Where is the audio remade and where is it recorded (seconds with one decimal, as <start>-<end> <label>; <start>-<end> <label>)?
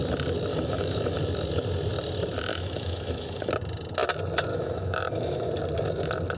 0.0-0.5 recorded; 0.5-1.2 remade; 1.2-2.5 recorded; 2.5-3.5 remade; 3.5-4.5 recorded; 4.5-5.5 remade; 5.5-6.4 recorded